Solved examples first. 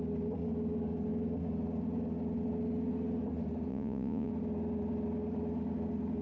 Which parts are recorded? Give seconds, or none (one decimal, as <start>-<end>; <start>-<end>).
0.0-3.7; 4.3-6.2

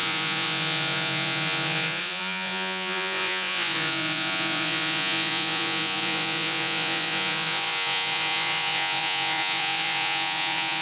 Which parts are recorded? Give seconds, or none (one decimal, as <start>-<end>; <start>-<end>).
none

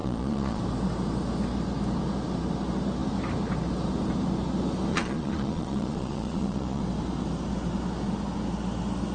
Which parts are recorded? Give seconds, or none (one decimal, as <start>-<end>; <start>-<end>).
0.6-4.9; 6.8-9.1